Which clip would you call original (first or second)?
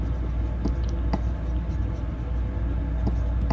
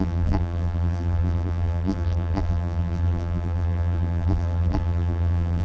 first